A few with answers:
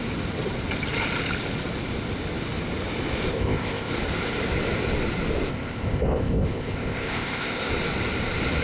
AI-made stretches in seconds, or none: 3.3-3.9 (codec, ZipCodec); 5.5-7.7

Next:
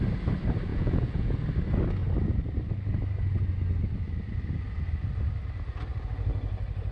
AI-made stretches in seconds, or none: 0.7-1.3 (vocoder, Vocos)

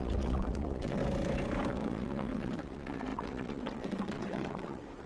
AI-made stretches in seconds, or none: 0.0-1.0 (vocoder, WaveNeXt); 1.7-5.1